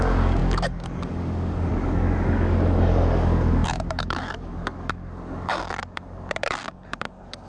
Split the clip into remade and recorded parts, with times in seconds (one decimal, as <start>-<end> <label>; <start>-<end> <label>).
0.0-7.5 remade